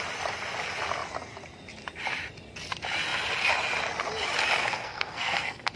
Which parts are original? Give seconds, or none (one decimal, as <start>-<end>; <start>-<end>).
0.0-4.6